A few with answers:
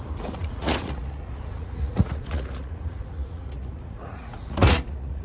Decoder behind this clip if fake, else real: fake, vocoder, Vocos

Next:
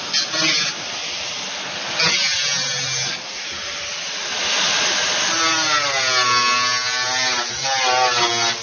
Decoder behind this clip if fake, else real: real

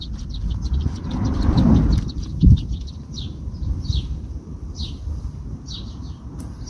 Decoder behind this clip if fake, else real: fake, vocoder, BigVGAN v2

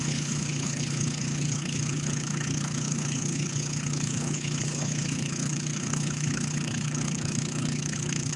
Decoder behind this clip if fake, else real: fake, codec, HILCodec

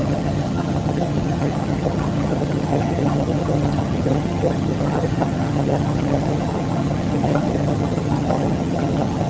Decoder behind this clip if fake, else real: fake, vocoder, HiFi-GAN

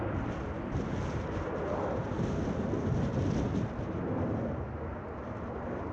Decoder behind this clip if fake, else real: real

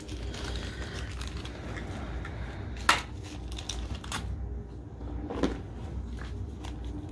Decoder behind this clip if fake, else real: real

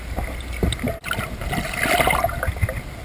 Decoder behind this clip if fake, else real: real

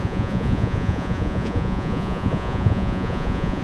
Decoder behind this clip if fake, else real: fake, vocoder, Vocos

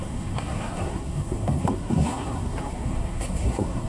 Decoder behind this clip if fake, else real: fake, codec, SNAC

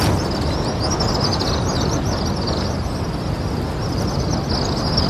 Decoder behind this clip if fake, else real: real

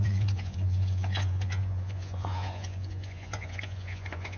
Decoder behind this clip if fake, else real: fake, vocoder, Vocos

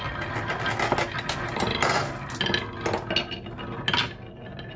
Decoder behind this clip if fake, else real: real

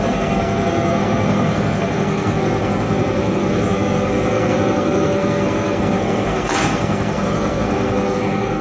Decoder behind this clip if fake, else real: fake, codec, SNAC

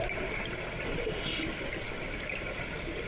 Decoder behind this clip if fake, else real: real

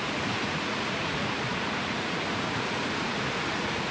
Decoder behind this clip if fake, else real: fake, vocoder, Vocos